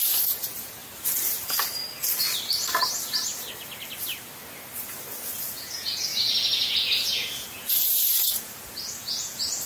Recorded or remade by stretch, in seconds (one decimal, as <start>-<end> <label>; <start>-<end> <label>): 0.0-0.8 remade; 0.8-5.5 recorded; 5.5-9.7 remade